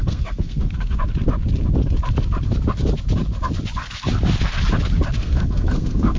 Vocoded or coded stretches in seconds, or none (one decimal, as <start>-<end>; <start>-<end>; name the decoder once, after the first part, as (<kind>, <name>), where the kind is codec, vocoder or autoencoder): 0.0-1.0 (codec, SNAC); 5.2-6.2